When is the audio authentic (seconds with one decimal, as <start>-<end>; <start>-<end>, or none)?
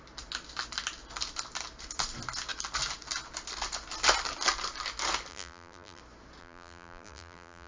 0.0-5.3; 6.0-6.4